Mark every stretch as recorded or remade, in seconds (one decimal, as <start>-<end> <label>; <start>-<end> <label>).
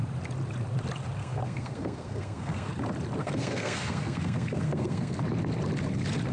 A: 0.0-1.2 recorded; 1.2-2.7 remade; 2.7-3.2 recorded; 3.2-5.2 remade; 5.2-6.3 recorded